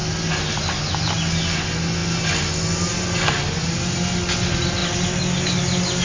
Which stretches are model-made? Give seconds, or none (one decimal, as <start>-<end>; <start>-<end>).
none